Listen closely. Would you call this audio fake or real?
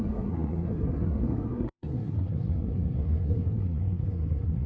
fake